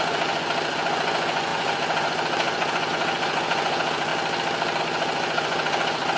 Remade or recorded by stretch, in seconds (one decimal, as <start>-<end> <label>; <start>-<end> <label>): 0.0-4.1 remade; 4.1-4.8 recorded; 4.8-6.2 remade